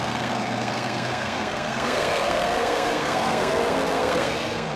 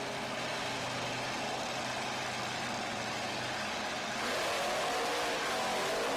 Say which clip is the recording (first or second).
second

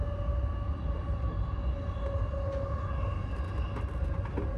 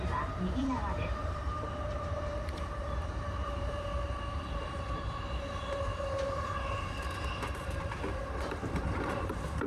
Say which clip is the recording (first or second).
first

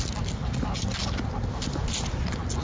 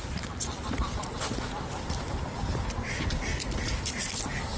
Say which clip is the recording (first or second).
first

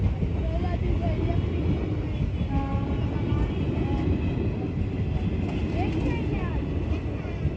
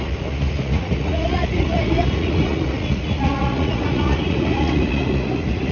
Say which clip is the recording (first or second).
first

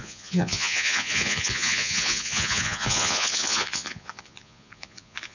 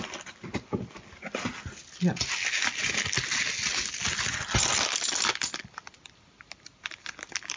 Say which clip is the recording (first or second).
second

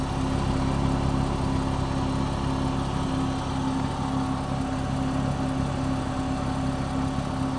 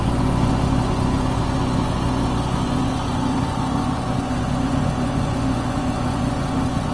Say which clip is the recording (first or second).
first